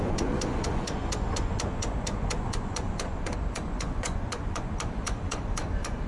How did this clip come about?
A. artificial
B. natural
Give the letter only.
A